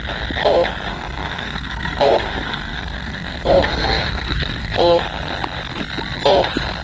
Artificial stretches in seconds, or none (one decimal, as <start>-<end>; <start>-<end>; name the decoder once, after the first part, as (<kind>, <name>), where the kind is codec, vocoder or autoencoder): 0.9-5.0 (codec, SNAC)